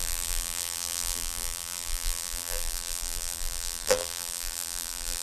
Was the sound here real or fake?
fake